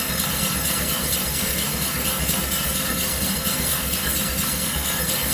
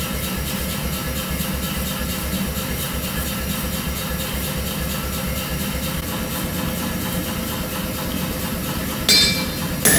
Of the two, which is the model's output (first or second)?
first